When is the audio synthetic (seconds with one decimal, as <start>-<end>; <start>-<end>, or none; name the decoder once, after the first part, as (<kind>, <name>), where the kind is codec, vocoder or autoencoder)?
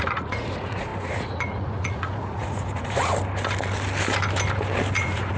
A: 0.0-3.1 (vocoder, Vocos); 5.0-5.4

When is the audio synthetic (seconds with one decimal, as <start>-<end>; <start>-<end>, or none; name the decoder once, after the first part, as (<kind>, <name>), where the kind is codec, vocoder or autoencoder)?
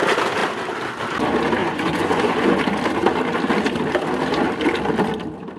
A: 1.6-2.6 (vocoder, Vocos)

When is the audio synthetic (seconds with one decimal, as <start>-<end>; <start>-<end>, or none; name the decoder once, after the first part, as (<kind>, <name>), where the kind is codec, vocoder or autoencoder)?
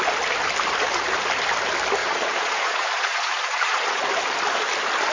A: 2.0-4.0 (vocoder, Vocos)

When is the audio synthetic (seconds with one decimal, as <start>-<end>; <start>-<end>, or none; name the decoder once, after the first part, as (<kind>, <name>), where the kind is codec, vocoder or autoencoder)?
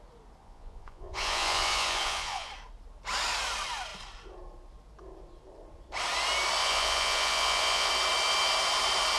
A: 0.4-2.5 (vocoder, Vocos); 6.6-7.9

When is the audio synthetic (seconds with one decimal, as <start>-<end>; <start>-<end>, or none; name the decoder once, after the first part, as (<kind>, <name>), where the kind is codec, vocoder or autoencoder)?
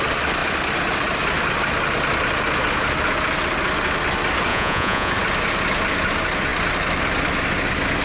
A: 4.5-5.1 (vocoder, Vocos)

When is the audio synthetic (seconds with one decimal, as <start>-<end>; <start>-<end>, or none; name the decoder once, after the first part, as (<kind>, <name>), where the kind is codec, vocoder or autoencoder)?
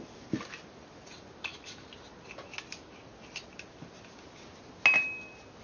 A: none